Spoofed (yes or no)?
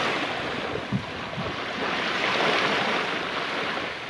no